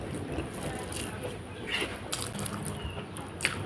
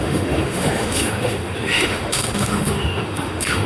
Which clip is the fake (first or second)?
second